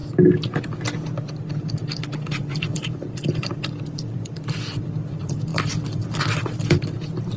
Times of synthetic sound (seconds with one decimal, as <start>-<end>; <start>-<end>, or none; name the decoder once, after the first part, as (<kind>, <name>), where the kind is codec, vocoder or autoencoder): 2.2-7.4 (vocoder, BigVGAN v2)

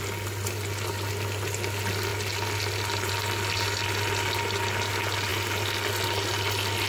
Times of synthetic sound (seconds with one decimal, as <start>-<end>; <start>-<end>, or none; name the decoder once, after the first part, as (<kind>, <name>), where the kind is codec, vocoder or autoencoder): none